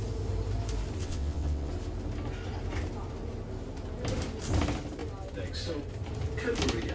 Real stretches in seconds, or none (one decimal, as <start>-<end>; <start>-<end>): 0.0-1.0; 1.7-6.9

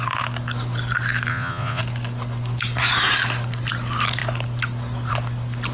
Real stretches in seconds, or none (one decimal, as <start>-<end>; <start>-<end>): 0.0-1.3; 1.8-5.7

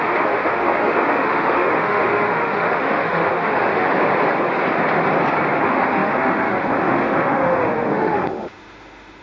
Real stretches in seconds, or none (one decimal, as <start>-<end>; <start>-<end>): 3.9-5.6